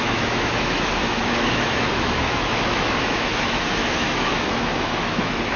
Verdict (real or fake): fake